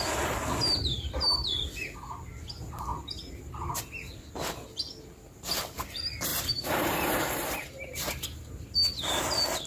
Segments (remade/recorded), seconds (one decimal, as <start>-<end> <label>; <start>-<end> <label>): 0.0-6.3 recorded; 6.3-8.6 remade; 8.6-9.7 recorded